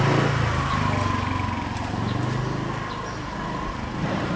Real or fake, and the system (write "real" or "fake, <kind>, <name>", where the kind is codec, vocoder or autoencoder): real